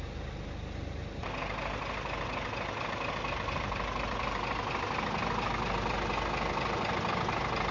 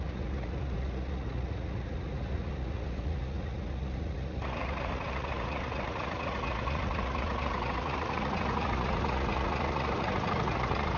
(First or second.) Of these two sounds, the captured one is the first